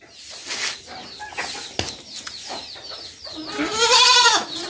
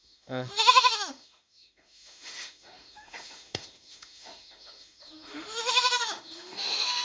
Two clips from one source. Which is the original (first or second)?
first